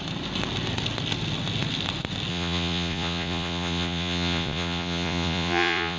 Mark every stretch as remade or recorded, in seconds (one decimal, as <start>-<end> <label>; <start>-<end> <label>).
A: 0.0-2.3 recorded; 2.3-6.0 remade